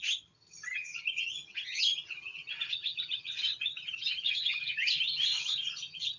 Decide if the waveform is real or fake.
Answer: fake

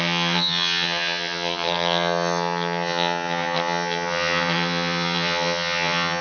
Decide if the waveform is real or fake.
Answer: fake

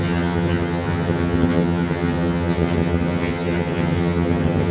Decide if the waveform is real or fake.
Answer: fake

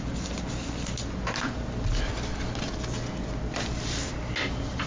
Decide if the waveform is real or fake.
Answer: real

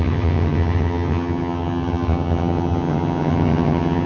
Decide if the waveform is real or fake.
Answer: fake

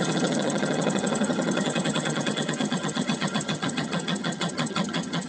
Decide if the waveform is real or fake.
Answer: fake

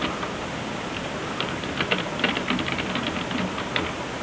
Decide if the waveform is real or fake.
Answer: real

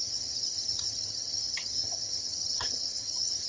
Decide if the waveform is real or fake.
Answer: fake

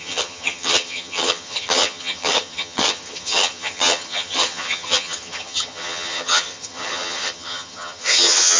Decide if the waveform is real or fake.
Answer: fake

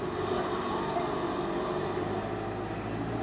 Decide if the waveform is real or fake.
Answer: real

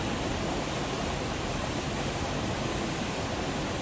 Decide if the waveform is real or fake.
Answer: real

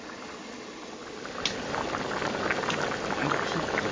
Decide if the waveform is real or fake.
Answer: real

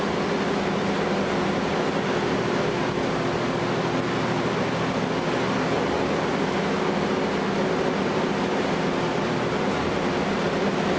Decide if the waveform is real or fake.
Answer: real